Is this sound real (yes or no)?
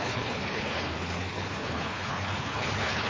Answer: no